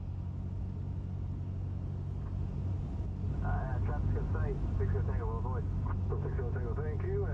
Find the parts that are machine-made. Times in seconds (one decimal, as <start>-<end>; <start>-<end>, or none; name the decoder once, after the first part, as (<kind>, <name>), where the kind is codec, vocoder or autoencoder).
none